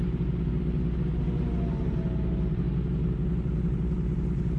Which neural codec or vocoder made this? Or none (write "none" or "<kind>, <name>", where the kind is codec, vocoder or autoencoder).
none